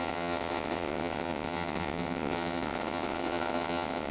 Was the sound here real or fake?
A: fake